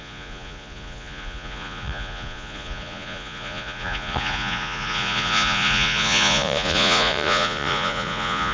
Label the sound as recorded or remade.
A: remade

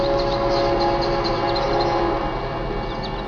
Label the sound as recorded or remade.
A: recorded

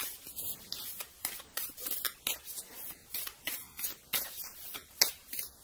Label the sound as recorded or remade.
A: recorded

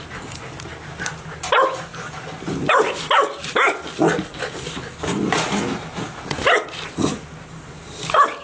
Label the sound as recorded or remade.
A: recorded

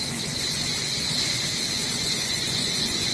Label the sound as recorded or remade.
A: remade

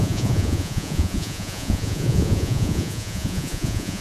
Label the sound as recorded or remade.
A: remade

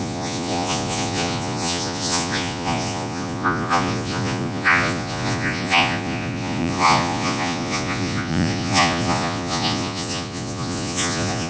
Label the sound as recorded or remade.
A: remade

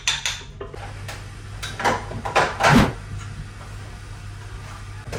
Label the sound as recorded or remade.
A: recorded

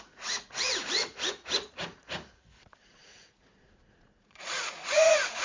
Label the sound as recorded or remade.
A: remade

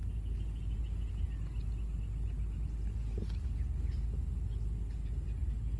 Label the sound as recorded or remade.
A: recorded